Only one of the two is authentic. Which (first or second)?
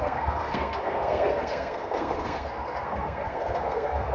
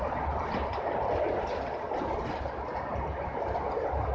second